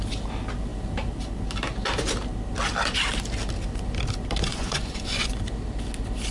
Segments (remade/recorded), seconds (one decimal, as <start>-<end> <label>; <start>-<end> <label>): 0.0-4.5 recorded; 4.5-5.4 remade; 5.4-6.3 recorded